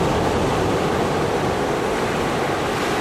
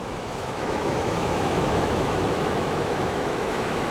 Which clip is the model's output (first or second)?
second